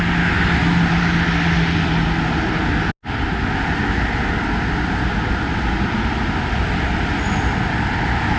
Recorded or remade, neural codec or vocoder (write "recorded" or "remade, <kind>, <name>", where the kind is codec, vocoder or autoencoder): recorded